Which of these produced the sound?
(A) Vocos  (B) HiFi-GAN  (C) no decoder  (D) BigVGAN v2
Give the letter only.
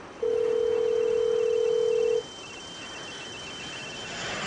C